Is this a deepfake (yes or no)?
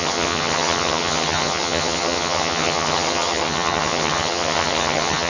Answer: yes